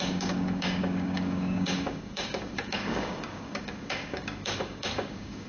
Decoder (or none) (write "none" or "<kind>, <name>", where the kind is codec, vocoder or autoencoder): codec, DAC